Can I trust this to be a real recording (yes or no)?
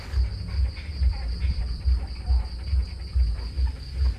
yes